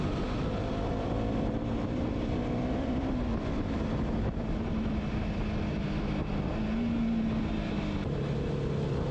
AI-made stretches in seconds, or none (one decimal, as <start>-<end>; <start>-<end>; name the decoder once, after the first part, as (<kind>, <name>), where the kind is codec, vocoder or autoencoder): 0.9-6.1 (vocoder, BigVGAN v2)